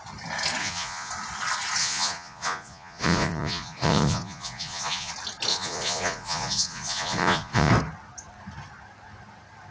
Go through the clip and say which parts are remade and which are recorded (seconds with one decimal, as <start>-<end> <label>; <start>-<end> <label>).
0.0-0.6 recorded; 0.6-1.1 remade; 1.1-1.8 recorded; 1.8-5.1 remade; 5.1-5.5 recorded; 5.5-7.7 remade; 7.7-9.7 recorded